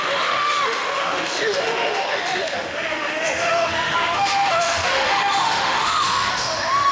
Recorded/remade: remade